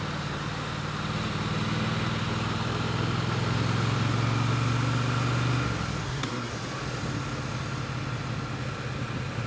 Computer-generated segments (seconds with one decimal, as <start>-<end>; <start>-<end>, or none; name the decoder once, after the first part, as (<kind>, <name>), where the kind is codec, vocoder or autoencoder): 6.0-6.5 (codec, SNAC)

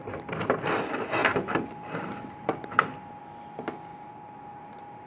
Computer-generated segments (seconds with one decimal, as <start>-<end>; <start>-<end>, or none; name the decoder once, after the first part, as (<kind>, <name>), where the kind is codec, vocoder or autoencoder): 1.2-3.2 (vocoder, BigVGAN v2); 3.9-5.1

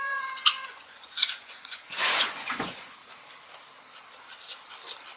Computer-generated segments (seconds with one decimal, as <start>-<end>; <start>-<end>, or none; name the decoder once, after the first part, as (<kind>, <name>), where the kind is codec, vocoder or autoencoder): 0.0-3.0 (vocoder, Vocos)